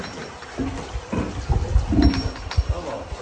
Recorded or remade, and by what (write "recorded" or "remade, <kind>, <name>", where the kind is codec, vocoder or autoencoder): recorded